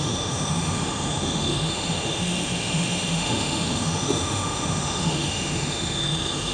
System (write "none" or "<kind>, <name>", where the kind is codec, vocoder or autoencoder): autoencoder, DAC-VAE